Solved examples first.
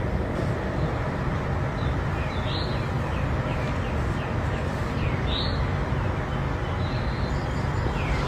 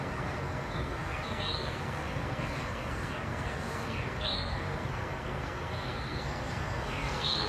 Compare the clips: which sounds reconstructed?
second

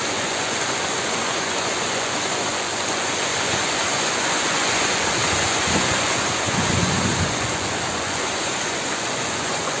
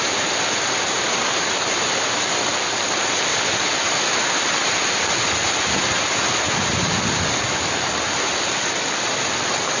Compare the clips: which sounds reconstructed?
first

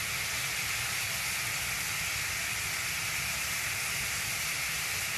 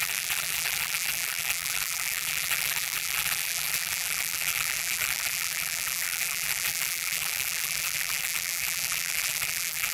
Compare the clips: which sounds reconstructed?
second